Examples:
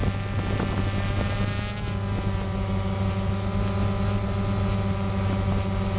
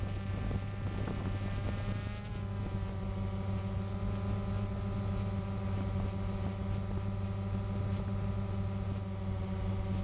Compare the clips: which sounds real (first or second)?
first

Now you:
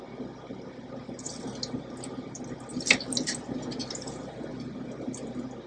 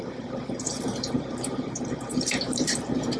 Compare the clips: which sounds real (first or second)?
first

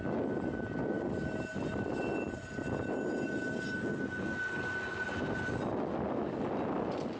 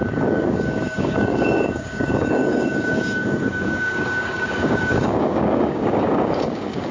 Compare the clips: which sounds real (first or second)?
first